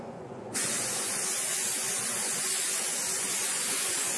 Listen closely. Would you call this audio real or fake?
fake